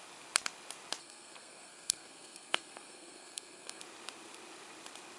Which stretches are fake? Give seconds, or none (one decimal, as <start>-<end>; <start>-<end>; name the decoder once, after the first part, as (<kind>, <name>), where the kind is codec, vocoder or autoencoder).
1.0-3.8 (codec, SNAC)